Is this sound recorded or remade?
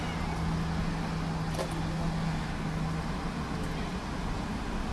recorded